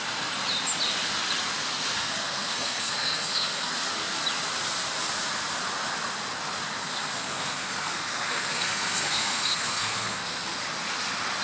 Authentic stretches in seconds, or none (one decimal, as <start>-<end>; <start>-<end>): 0.0-1.9; 3.7-6.8; 10.6-11.4